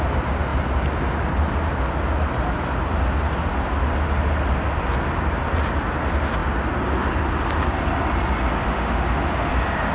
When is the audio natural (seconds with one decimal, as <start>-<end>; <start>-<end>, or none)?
0.0-8.6; 9.5-9.9